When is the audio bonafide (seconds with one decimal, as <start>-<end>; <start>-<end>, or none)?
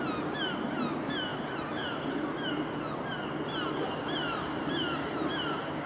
0.0-5.9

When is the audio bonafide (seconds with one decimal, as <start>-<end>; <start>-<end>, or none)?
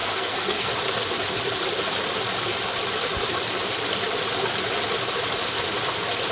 0.7-6.3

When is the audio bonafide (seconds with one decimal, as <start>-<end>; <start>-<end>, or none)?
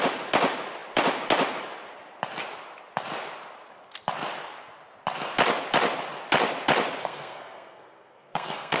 0.0-7.0